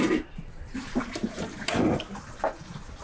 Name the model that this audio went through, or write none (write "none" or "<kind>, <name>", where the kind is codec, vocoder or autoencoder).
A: none